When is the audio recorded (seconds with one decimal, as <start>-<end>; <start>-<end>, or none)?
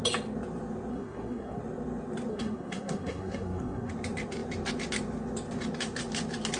0.0-0.9; 1.6-2.3; 3.9-6.6